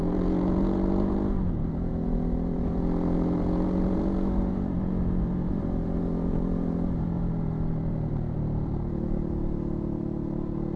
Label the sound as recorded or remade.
remade